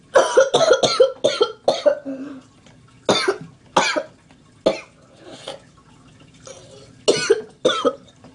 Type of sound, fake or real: real